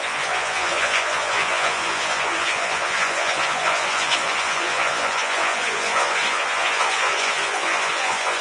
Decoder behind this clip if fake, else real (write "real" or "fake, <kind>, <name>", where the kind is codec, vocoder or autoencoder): fake, vocoder, Vocos